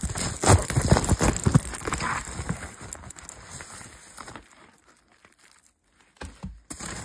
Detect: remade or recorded recorded